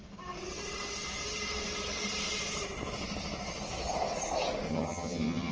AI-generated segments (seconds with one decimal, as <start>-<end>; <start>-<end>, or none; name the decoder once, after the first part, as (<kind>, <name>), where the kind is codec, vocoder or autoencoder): 4.7-5.5 (vocoder, HiFi-GAN)